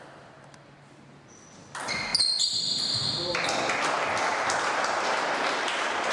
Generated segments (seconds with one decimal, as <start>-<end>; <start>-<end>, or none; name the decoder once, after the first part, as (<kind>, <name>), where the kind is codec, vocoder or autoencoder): none